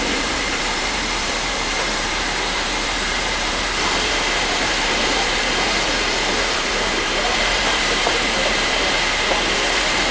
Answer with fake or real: fake